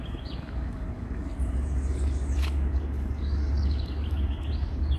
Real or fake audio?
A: fake